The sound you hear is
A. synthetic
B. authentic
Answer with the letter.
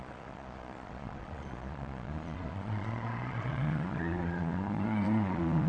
A